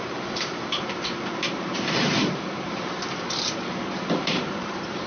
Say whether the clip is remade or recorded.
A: remade